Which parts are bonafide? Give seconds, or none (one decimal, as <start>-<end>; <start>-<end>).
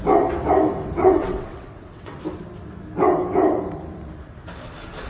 0.0-1.0; 2.2-5.1